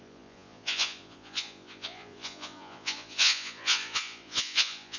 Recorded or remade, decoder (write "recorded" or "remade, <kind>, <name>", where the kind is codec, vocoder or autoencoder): remade, vocoder, Vocos